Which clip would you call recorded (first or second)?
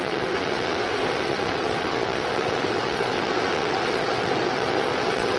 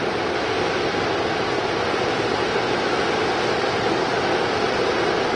second